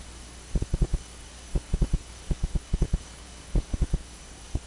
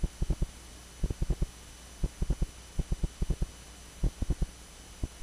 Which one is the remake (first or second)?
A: first